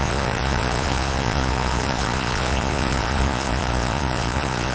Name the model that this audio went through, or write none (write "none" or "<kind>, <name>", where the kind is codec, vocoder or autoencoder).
vocoder, Vocos